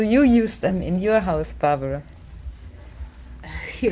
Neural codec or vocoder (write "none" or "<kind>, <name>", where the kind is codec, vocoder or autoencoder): none